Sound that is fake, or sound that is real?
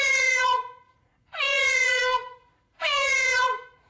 fake